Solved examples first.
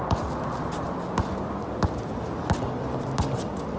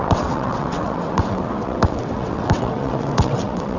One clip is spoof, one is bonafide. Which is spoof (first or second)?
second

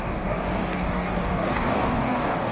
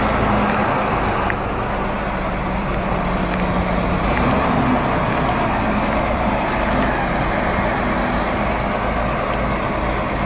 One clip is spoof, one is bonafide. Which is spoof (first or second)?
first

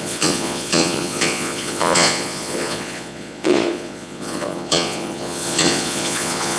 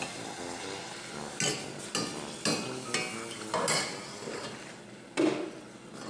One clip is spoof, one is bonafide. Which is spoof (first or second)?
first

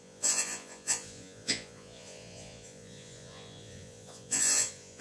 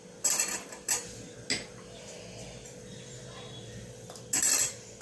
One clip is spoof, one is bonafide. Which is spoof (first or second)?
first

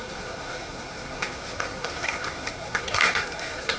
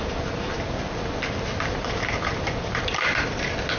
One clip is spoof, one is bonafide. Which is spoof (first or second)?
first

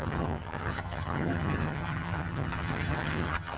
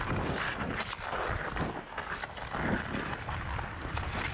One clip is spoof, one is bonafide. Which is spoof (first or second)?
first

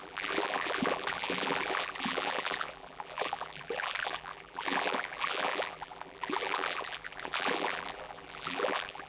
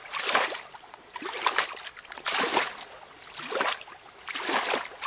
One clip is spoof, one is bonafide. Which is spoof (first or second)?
first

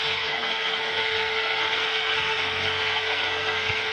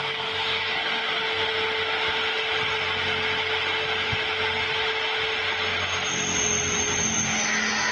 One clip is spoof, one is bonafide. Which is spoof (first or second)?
first